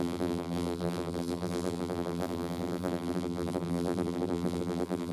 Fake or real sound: fake